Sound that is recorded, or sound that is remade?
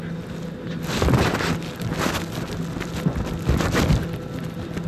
recorded